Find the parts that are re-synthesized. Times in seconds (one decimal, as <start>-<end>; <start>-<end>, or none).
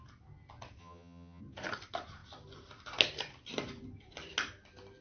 0.8-1.4